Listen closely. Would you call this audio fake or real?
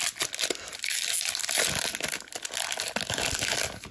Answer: real